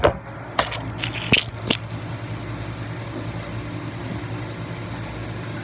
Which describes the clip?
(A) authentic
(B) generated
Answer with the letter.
A